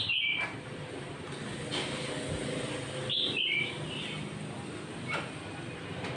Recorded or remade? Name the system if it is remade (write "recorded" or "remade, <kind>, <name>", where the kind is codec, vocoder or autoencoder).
recorded